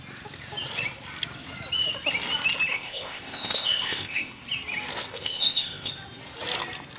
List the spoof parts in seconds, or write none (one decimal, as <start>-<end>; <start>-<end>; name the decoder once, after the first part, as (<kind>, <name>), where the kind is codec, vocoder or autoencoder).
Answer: 2.7-4.4 (codec, ZipCodec); 5.1-5.9